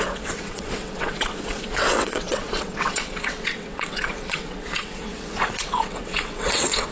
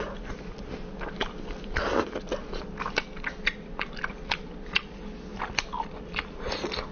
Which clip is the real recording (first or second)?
second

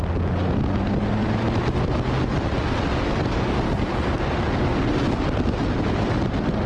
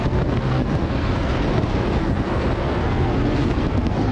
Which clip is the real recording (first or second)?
first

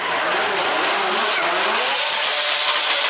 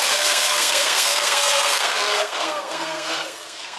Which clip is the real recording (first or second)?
first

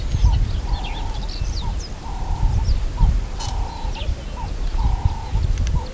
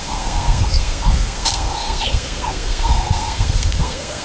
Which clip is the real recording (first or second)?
first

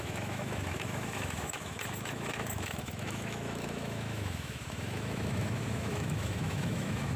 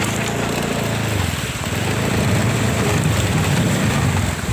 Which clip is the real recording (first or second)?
second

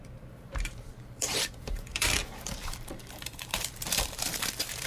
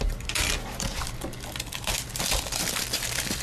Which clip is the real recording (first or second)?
second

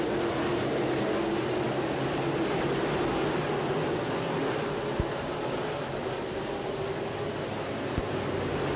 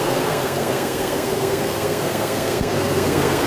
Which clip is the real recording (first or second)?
first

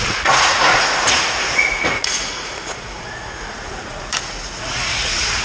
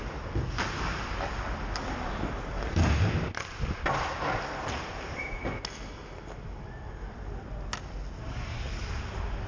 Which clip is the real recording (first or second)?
second